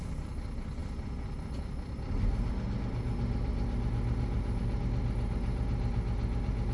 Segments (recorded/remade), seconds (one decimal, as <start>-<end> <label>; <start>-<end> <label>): 0.0-6.7 recorded